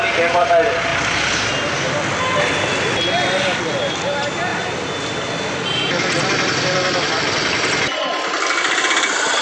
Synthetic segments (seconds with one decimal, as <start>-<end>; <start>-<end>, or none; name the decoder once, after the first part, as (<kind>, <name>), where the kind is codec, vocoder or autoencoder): none